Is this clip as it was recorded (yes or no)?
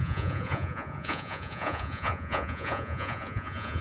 no